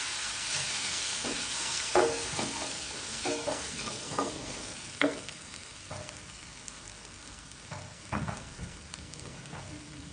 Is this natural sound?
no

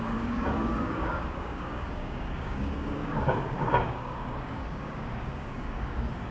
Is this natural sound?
no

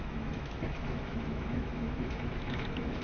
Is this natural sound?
no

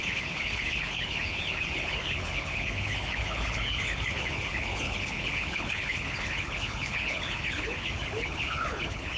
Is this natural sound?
no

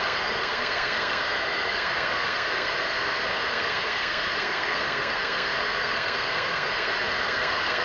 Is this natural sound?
no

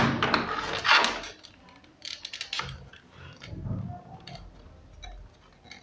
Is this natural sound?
yes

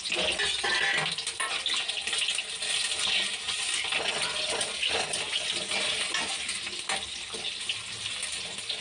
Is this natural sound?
yes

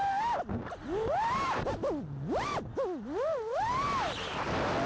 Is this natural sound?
yes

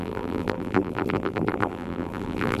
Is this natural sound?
no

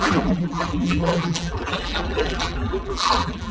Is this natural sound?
no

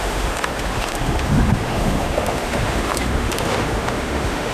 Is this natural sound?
no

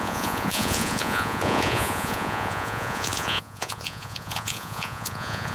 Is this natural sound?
no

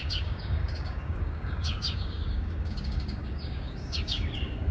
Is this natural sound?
no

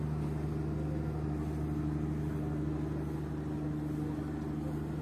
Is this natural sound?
yes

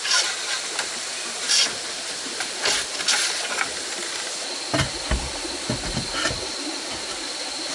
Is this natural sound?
yes